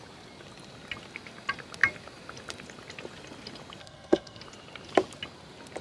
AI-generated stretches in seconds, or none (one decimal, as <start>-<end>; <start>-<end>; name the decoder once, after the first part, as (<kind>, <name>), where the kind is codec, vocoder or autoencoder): 3.8-4.4 (codec, SNAC)